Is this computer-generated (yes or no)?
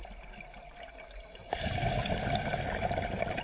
no